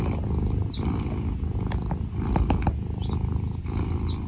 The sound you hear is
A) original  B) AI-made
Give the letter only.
A